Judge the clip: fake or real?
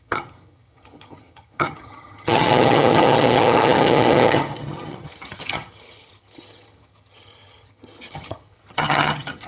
fake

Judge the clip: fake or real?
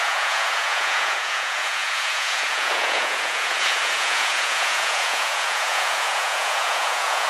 fake